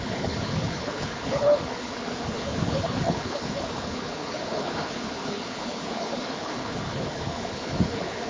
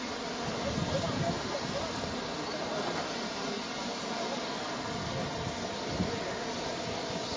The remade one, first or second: first